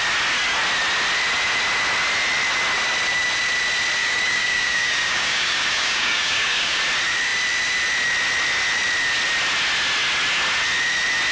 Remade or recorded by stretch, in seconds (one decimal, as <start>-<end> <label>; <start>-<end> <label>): 0.0-4.0 recorded; 4.0-6.8 remade; 6.8-11.3 recorded